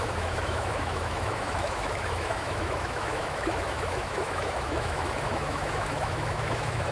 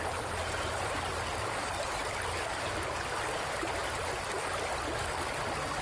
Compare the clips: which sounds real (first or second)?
second